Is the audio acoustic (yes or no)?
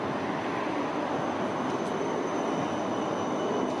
yes